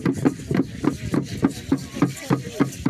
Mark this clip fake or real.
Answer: real